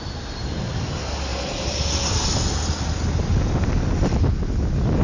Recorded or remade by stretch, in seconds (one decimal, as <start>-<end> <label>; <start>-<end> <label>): 0.0-5.0 recorded